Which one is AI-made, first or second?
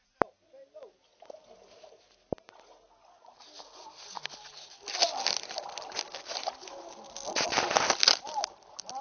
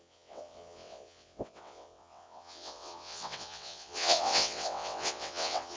second